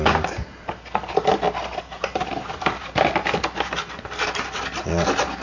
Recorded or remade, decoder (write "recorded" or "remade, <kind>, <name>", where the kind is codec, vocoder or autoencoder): recorded